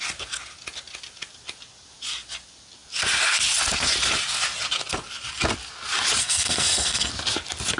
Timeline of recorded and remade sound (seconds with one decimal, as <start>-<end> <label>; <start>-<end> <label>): 0.0-6.2 recorded; 6.2-7.1 remade; 7.1-7.8 recorded